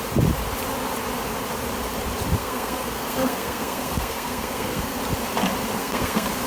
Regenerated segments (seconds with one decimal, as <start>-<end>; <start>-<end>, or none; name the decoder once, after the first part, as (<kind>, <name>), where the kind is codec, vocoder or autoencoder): 2.4-5.0 (codec, SNAC); 5.8-6.5